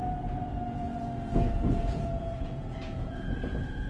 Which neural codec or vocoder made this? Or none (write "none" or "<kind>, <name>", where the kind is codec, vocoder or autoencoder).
vocoder, Vocos